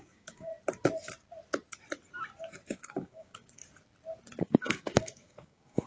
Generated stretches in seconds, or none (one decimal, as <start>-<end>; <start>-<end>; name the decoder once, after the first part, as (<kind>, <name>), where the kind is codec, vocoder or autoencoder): 0.0-0.5 (codec, DAC); 2.7-3.6; 4.4-5.9